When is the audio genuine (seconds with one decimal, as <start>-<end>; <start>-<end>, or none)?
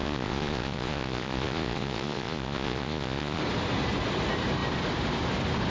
3.4-5.7